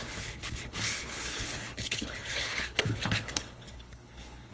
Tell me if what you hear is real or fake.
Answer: fake